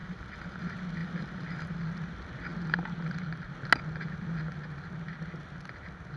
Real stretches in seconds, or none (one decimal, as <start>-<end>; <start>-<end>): 0.6-1.0; 1.8-6.2